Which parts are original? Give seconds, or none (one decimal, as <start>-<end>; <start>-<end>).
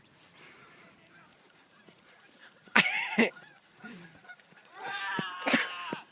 0.0-1.3; 5.0-6.1